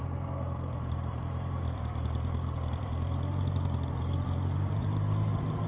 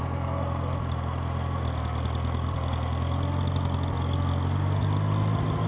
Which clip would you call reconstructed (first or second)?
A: first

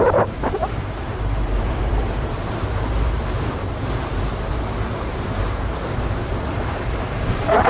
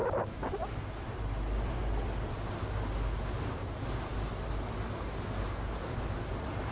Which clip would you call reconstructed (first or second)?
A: first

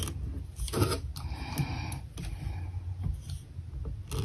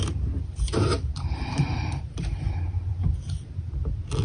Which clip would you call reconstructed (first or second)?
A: second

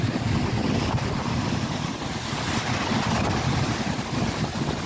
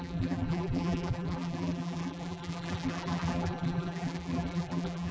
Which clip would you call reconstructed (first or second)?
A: second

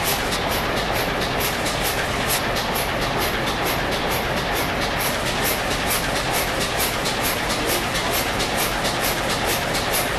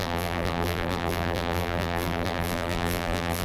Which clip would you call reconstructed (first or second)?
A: second